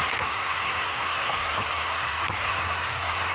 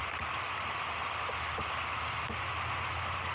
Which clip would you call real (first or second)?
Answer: second